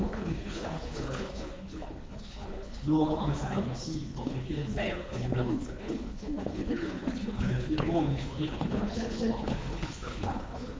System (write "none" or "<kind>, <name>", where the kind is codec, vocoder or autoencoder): codec, HILCodec